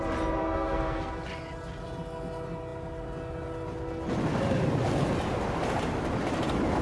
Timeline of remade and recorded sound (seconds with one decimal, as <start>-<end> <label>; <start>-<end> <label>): 0.0-0.4 recorded; 0.4-1.1 remade; 1.1-6.8 recorded